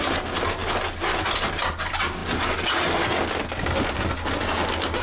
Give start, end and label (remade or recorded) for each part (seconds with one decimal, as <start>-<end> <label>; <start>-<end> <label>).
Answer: 0.0-5.0 recorded